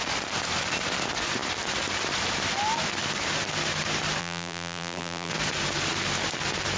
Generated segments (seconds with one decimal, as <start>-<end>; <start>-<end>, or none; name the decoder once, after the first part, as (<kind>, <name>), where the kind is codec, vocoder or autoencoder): 4.2-5.3 (vocoder, BigVGAN v2)